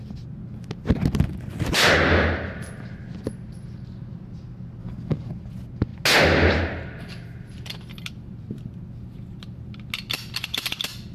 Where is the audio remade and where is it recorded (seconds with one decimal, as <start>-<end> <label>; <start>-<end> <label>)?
0.0-4.8 recorded; 4.8-5.3 remade; 5.3-11.1 recorded